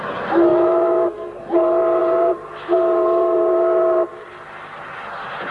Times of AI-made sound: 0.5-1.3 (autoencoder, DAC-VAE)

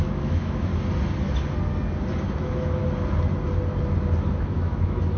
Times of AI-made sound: 0.0-0.7 (autoencoder, DAC-VAE); 2.4-2.8; 4.4-5.2